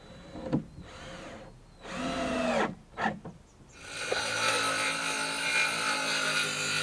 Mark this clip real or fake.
real